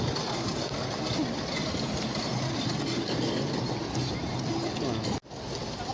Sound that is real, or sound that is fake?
real